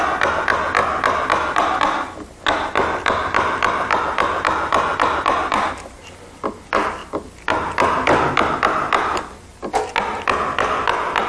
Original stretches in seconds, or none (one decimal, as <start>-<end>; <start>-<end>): 0.0-11.3